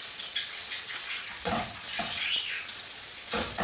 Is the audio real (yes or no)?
no